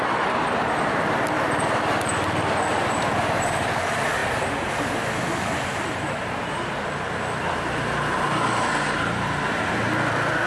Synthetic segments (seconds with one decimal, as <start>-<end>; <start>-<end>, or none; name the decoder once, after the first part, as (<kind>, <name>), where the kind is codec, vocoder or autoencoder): none